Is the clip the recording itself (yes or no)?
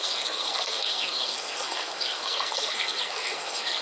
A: no